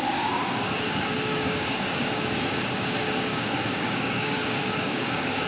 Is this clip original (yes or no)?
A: no